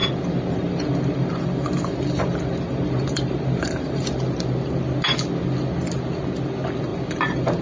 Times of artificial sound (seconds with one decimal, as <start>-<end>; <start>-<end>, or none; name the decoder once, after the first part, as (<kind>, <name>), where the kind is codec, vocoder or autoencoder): 0.0-4.5 (vocoder, BigVGAN v2); 6.9-7.6

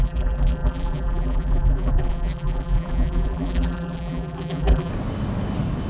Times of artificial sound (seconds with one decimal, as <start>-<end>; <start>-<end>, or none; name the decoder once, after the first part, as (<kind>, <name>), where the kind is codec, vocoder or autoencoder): 0.0-4.9 (vocoder, BigVGAN v2)

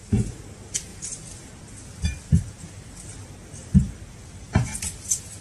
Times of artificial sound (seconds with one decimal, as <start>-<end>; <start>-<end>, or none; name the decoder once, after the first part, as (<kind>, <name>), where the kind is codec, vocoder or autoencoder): none

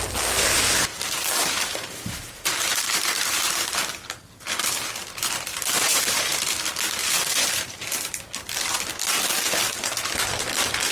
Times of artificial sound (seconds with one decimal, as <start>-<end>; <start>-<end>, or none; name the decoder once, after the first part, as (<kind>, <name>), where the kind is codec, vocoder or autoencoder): 0.9-3.8 (vocoder, BigVGAN v2); 5.5-6.4; 7.0-8.1

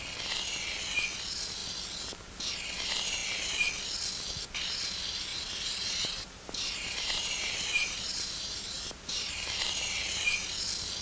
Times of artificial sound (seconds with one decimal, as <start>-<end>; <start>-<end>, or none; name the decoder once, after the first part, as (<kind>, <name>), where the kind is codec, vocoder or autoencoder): 5.3-9.4 (vocoder, BigVGAN v2)

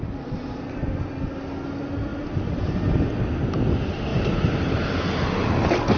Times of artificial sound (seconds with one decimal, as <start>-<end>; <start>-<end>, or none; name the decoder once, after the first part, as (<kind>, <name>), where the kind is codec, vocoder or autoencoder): 2.1-3.0 (vocoder, BigVGAN v2); 4.1-5.1

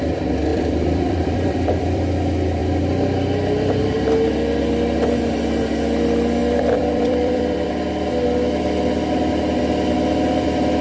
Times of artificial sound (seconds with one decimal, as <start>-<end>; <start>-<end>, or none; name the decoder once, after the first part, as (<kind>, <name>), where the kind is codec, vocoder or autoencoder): 0.5-2.1 (vocoder, BigVGAN v2); 6.4-7.7

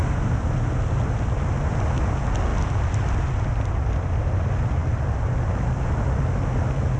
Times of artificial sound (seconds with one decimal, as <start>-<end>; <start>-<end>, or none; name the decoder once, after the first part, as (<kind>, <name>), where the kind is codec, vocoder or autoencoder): none